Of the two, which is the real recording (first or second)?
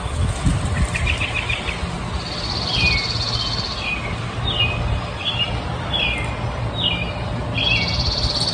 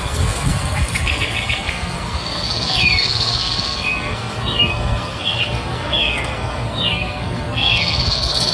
first